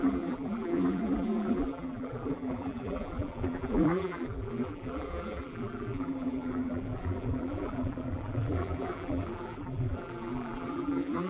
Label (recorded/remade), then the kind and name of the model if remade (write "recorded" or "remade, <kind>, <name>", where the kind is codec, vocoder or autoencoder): remade, vocoder, BigVGAN v2